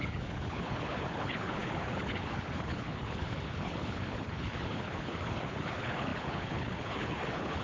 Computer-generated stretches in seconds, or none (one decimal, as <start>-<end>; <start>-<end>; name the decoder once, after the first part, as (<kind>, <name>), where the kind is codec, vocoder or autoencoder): 0.0-7.6 (codec, HILCodec)